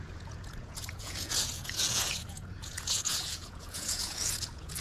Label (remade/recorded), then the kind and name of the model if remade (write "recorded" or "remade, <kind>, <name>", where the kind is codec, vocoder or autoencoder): remade, vocoder, Vocos